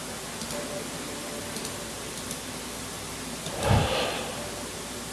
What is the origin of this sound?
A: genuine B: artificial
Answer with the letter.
A